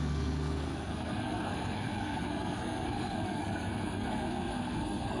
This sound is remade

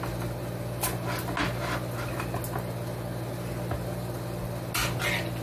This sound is recorded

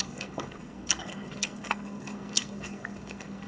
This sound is remade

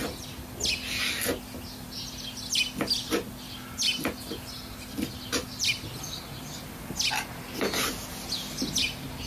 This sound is recorded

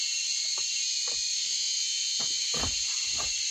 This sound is recorded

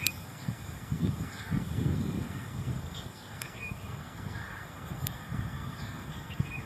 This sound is remade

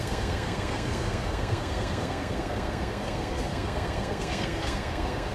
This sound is remade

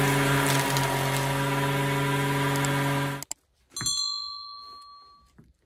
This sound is recorded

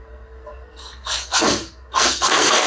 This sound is remade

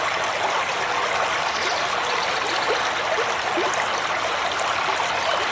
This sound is recorded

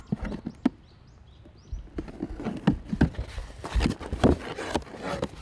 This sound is recorded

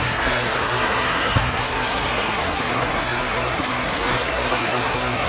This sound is remade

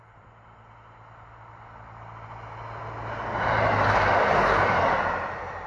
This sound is recorded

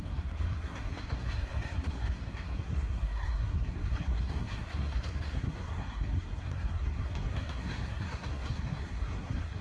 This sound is remade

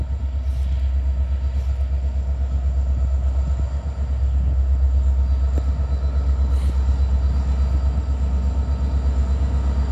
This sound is recorded